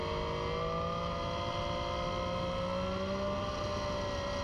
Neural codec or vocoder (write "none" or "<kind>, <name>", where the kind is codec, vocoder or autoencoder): none